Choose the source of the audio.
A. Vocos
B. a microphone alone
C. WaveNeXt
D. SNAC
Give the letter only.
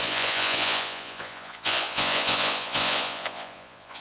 A